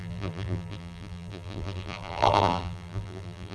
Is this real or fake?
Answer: fake